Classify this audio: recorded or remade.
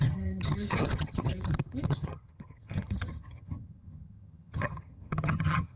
remade